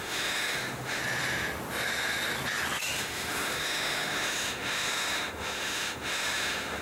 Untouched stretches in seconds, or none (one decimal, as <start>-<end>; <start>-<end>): 1.0-2.8